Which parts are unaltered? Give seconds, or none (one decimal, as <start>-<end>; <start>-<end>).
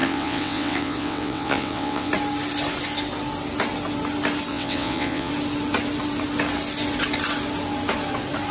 2.1-4.5; 5.3-8.5